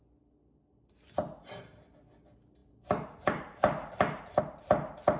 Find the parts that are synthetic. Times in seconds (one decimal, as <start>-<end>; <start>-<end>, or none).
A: none